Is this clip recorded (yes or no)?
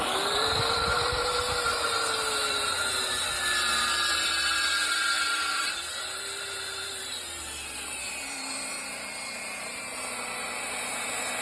no